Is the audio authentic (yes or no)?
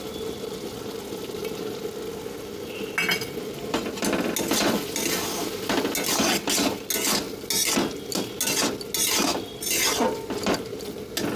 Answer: yes